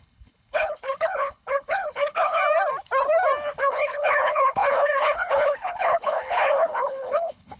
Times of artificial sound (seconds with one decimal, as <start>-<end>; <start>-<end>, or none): 0.0-2.4; 3.5-7.6